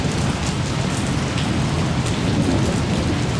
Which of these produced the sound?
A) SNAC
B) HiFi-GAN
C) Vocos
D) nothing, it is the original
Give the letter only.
D